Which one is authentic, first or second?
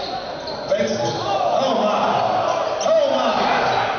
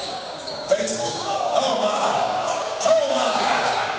first